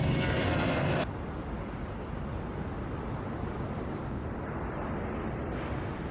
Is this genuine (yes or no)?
yes